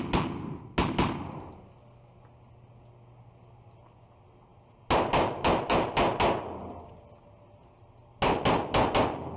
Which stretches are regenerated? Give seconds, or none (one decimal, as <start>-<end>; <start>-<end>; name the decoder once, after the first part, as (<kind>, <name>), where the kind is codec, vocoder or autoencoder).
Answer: none